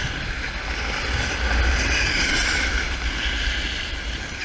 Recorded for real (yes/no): yes